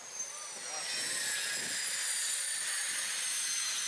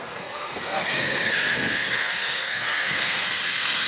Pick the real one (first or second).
first